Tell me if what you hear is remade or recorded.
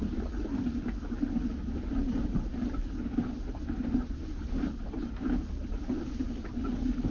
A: recorded